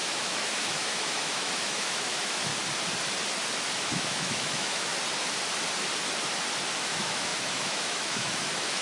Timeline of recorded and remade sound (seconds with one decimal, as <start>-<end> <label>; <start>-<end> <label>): 0.0-2.5 remade; 2.5-3.8 recorded; 3.8-4.9 remade; 4.9-6.8 recorded; 6.8-8.8 remade